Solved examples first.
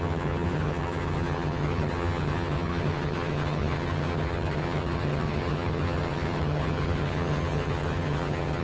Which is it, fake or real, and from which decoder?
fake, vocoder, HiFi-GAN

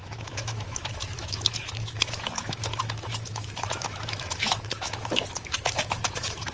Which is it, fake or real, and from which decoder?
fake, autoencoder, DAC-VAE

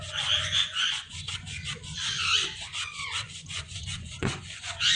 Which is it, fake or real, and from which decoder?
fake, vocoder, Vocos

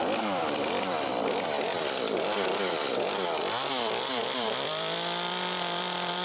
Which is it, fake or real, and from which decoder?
fake, vocoder, BigVGAN v2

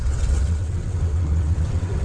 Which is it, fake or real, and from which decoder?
fake, vocoder, WaveNeXt